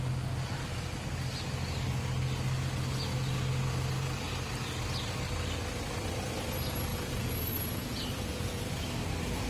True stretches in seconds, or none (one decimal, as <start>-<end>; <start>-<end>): 0.0-6.9; 8.7-9.5